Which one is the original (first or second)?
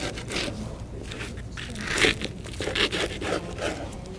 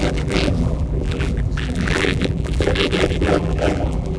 first